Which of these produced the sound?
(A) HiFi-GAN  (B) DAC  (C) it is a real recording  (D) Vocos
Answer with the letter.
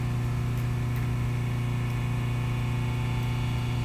C